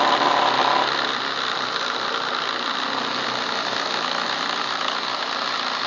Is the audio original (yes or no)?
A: yes